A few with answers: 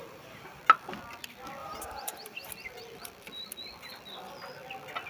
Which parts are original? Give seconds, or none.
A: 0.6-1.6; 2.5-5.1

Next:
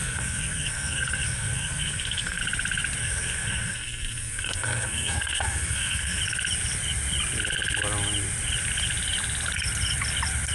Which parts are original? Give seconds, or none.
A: 2.4-3.0; 6.2-10.5

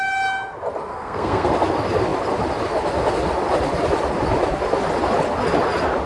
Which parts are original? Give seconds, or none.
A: 0.0-0.9; 1.5-6.1

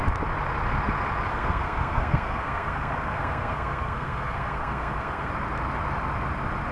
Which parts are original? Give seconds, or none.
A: 0.0-1.3; 5.3-6.7